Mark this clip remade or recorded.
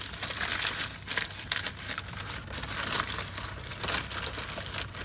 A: recorded